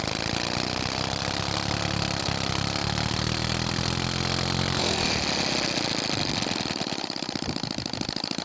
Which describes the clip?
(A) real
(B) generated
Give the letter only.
B